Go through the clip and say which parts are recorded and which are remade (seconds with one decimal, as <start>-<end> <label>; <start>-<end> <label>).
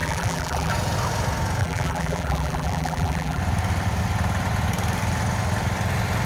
0.0-0.7 remade; 0.7-1.6 recorded; 1.6-3.4 remade; 3.4-6.3 recorded